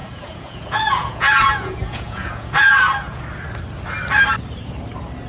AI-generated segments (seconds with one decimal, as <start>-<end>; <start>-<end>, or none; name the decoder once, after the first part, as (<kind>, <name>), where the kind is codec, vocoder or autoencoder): 0.0-3.2 (vocoder, Vocos)

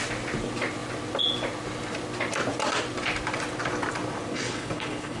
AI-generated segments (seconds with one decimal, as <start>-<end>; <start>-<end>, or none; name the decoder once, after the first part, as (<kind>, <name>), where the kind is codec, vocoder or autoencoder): 4.3-5.2 (codec, HILCodec)

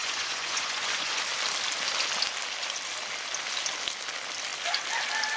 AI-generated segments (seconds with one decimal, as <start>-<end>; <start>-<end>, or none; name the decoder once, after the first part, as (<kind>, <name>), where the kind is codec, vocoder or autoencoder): 0.0-1.2 (vocoder, Vocos)

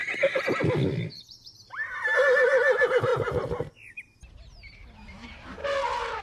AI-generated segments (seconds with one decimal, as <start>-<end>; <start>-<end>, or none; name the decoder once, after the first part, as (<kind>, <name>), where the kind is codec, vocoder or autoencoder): 1.1-6.2 (vocoder, BigVGAN v2)

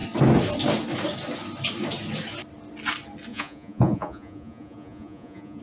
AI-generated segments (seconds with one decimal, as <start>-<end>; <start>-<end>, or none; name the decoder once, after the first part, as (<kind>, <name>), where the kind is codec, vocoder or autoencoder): 3.3-5.6 (vocoder, Vocos)

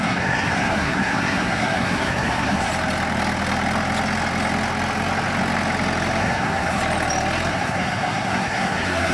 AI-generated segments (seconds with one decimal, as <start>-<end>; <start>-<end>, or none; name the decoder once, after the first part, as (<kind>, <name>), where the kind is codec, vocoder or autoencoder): 0.0-2.7 (codec, SNAC); 6.2-6.8; 7.5-9.1

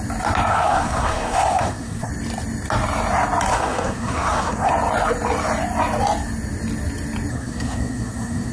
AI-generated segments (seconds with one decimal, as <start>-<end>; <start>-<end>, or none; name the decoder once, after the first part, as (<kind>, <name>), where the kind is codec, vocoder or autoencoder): 0.5-2.1 (codec, SNAC); 3.5-4.7; 7.3-8.5

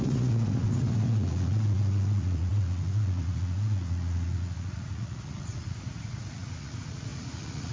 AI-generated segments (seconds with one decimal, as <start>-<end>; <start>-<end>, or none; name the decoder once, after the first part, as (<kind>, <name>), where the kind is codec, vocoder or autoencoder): 0.0-7.7 (vocoder, Vocos)